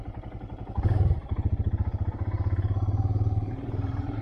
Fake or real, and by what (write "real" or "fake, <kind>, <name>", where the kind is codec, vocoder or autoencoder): fake, vocoder, BigVGAN v2